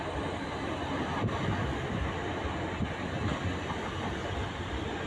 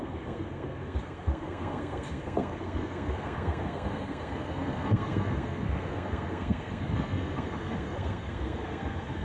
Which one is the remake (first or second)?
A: second